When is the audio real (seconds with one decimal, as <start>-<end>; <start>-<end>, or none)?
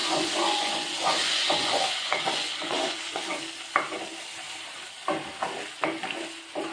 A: 3.2-6.7